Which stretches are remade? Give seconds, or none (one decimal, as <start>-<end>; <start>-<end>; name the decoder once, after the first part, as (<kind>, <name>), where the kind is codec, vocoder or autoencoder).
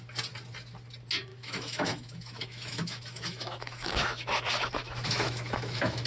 1.3-4.3 (autoencoder, DAC-VAE); 4.8-6.1